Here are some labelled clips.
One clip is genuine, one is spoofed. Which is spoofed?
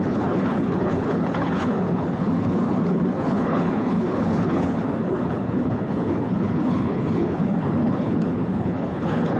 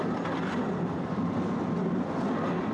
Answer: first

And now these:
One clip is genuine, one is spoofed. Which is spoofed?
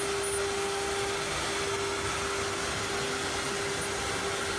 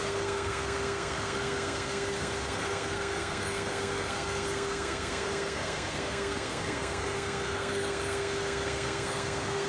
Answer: second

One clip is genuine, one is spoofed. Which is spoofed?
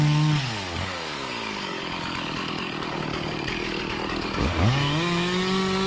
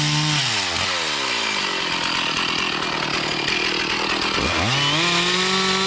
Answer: first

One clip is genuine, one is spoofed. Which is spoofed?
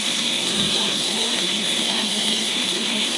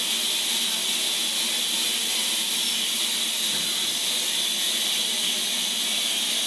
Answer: first